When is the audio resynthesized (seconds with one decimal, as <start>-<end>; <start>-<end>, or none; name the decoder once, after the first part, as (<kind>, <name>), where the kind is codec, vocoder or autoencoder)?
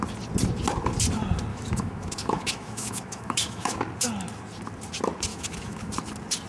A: 1.5-3.8 (autoencoder, DAC-VAE); 5.3-5.9